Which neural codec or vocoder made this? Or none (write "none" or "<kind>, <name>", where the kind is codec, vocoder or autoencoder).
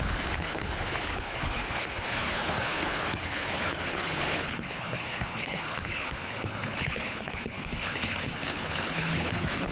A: codec, HILCodec